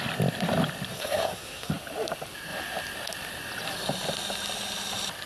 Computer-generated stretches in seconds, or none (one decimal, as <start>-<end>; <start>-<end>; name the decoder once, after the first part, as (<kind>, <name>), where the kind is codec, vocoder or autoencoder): 0.9-1.7 (codec, SNAC)